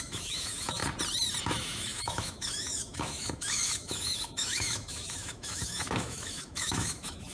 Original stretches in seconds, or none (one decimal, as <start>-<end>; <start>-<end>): 0.8-1.4